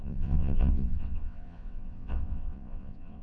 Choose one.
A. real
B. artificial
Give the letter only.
B